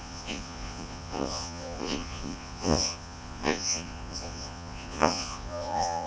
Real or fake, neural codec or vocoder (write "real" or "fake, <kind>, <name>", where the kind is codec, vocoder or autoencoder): fake, vocoder, Vocos